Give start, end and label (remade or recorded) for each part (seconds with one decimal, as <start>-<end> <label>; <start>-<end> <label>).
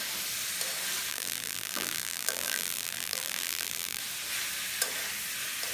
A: 0.0-1.1 recorded; 1.1-4.0 remade; 4.0-5.7 recorded